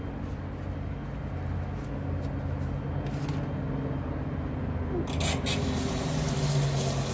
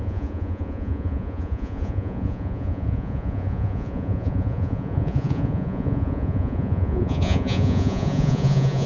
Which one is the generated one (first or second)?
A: second